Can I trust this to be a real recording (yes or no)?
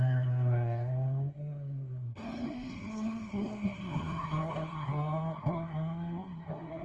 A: no